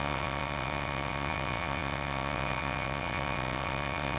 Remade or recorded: remade